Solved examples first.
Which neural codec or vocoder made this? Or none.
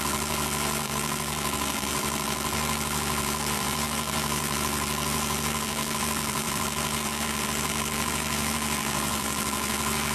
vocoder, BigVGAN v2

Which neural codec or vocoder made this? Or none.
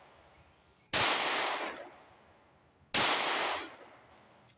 none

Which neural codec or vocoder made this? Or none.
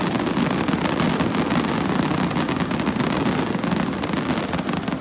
none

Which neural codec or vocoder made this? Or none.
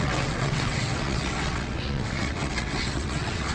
vocoder, WaveNeXt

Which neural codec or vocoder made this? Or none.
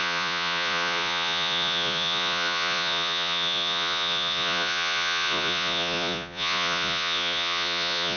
vocoder, Vocos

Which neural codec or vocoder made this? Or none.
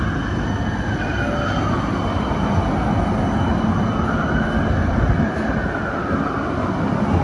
none